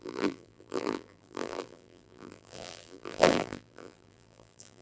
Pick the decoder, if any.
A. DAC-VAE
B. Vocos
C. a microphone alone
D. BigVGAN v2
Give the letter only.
D